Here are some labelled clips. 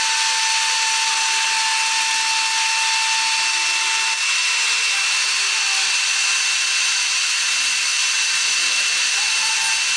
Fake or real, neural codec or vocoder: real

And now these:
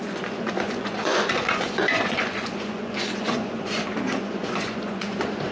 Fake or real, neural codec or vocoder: fake, vocoder, Vocos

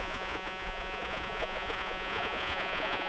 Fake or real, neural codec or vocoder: fake, vocoder, Vocos